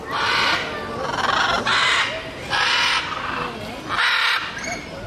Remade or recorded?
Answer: recorded